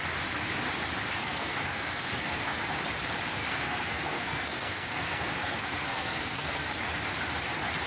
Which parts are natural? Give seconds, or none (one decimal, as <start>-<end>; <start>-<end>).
0.0-1.2; 2.6-3.4; 6.7-7.9